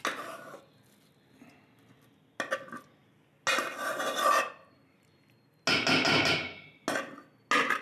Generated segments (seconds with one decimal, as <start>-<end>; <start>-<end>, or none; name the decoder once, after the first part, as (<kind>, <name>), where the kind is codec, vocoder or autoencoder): none